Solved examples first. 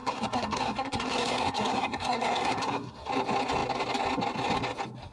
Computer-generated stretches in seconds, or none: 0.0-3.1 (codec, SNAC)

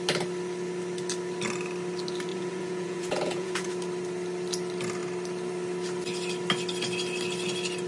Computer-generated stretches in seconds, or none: 2.3-3.7 (vocoder, Vocos)

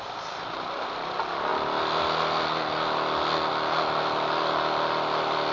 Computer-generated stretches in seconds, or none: none

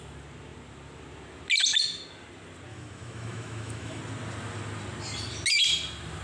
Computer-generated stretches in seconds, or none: 2.7-4.0 (autoencoder, DAC-VAE)

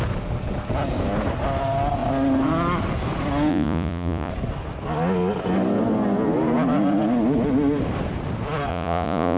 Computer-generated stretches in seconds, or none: 3.5-4.3 (vocoder, Vocos); 8.7-9.4

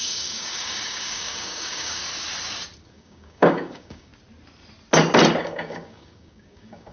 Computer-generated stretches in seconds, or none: 0.0-2.0 (codec, DAC); 2.9-4.1; 5.4-6.9